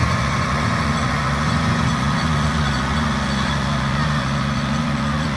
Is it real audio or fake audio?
fake